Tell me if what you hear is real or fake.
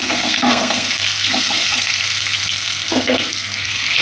fake